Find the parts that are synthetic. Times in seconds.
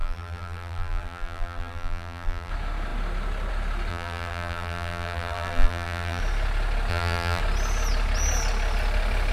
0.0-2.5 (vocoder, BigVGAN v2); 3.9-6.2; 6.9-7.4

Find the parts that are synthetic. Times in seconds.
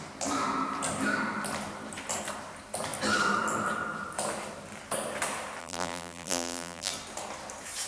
5.6-6.9 (vocoder, BigVGAN v2)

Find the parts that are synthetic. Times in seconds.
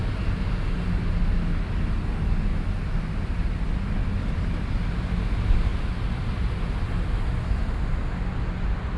none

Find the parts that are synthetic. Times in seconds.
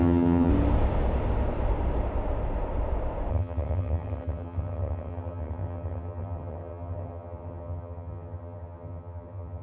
0.0-0.5 (vocoder, HiFi-GAN); 3.3-9.6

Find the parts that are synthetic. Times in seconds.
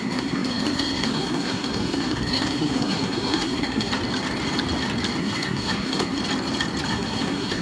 0.0-3.9 (codec, SNAC); 5.2-6.2; 6.9-7.6